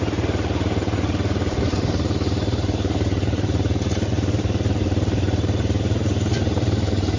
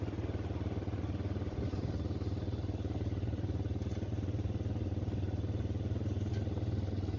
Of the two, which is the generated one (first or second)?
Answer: first